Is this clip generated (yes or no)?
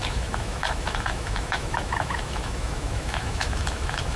yes